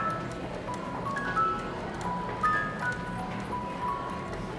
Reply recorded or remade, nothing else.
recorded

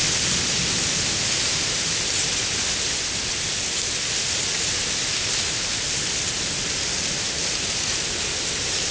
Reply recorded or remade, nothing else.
recorded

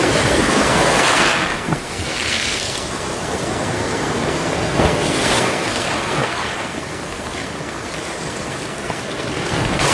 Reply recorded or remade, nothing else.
remade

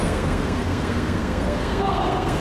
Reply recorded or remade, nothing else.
remade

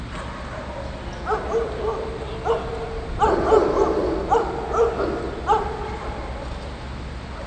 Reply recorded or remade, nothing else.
recorded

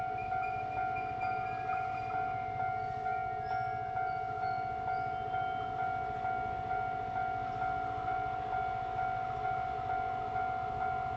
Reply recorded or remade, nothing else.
recorded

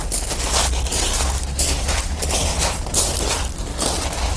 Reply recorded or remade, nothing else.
recorded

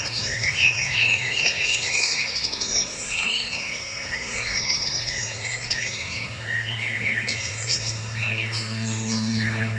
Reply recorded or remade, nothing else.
remade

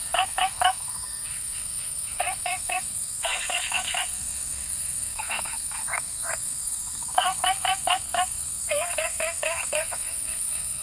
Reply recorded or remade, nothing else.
remade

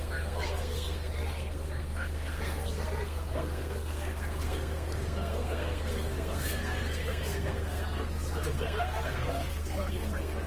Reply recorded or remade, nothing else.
remade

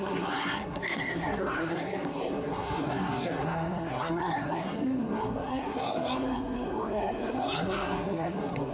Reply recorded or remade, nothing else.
remade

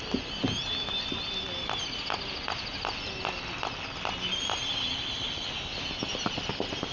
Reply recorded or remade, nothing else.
recorded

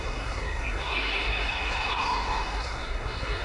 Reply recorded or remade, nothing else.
remade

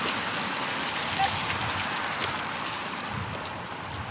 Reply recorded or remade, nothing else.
recorded